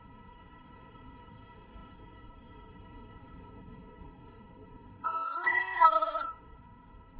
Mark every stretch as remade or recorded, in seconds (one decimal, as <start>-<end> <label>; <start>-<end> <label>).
0.0-7.2 remade